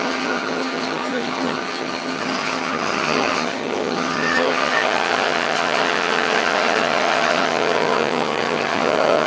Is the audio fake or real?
fake